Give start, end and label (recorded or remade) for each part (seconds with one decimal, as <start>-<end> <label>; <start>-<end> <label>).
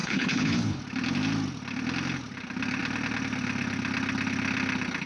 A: 0.0-0.8 remade; 0.8-5.1 recorded